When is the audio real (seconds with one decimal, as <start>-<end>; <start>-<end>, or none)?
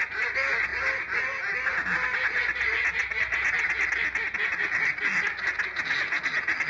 0.0-6.7